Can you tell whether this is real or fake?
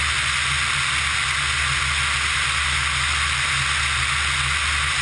real